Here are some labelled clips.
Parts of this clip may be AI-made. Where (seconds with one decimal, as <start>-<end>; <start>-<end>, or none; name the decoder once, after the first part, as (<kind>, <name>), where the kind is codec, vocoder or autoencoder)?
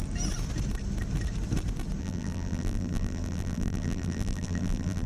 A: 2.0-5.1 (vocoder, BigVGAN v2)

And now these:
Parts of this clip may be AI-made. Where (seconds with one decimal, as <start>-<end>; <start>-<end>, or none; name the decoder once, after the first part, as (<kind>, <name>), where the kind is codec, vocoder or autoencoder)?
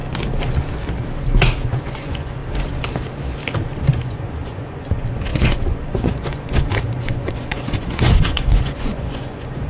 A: 1.8-2.4 (vocoder, Vocos); 3.9-9.7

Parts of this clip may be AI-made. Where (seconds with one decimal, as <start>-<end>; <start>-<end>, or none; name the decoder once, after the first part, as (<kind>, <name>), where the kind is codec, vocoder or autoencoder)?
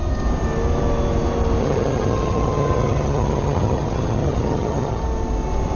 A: 1.6-5.0 (vocoder, HiFi-GAN)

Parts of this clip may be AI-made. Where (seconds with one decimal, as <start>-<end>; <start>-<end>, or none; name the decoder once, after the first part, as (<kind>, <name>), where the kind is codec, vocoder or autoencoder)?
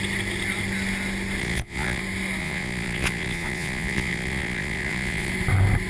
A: 1.4-2.0 (vocoder, Vocos); 2.4-5.3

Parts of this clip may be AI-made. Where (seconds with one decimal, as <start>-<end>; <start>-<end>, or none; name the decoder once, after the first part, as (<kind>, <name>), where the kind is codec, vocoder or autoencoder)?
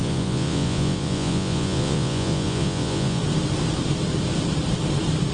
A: 0.0-3.2 (vocoder, Vocos)